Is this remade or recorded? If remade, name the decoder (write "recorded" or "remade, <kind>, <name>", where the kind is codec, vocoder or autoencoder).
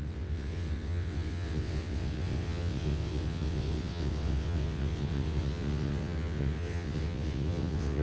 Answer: remade, vocoder, WaveNeXt